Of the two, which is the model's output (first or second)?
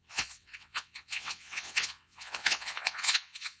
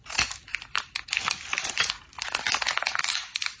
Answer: first